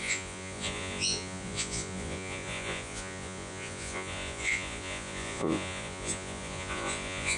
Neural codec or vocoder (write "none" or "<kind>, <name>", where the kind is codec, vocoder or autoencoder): vocoder, Vocos